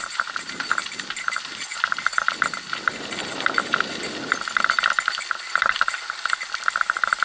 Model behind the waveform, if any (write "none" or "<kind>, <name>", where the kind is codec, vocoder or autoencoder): none